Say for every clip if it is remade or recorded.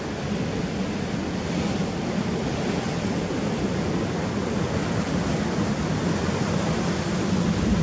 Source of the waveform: recorded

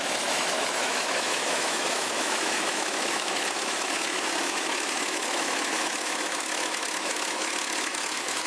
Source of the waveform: remade